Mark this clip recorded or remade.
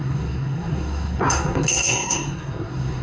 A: remade